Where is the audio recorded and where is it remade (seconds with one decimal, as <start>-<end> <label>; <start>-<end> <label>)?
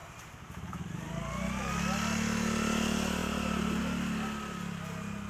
0.0-0.8 remade; 0.8-3.2 recorded; 3.2-3.8 remade; 3.8-5.3 recorded